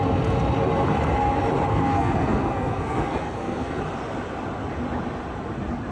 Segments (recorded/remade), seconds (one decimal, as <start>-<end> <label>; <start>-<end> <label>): 0.0-1.7 recorded; 1.7-3.8 remade; 3.8-5.9 recorded